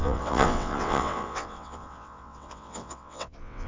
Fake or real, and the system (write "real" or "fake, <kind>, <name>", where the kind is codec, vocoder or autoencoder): fake, vocoder, WaveNeXt